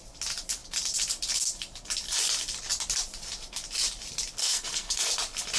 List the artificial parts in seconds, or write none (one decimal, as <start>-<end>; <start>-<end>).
4.4-5.1